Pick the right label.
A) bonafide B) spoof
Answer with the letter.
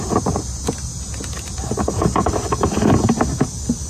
A